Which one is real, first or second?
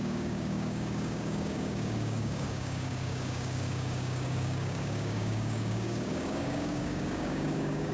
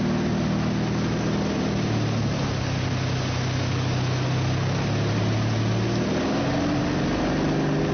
second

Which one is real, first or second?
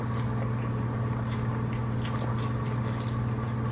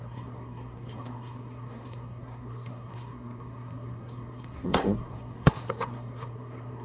first